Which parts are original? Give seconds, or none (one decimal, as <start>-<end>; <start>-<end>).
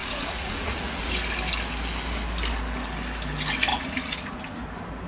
1.1-3.7; 4.4-5.1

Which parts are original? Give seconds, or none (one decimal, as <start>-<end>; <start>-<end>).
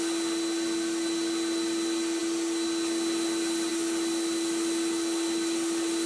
0.0-6.1